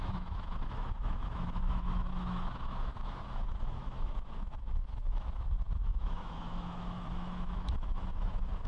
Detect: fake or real fake